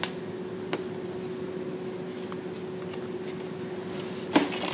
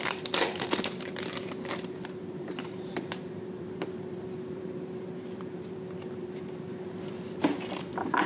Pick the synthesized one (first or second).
second